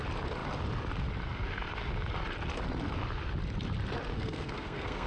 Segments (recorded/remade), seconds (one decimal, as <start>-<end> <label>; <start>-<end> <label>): 0.0-4.1 recorded; 4.1-5.1 remade